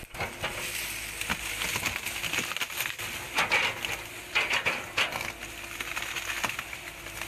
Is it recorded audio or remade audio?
recorded